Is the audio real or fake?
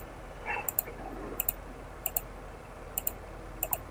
fake